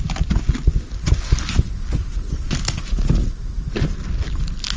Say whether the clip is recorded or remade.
recorded